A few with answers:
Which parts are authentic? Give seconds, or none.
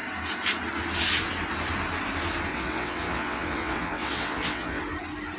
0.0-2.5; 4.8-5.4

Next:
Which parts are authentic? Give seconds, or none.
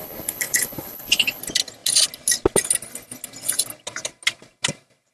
1.4-5.1